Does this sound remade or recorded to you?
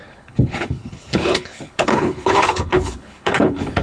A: remade